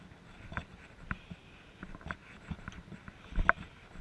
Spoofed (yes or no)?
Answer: no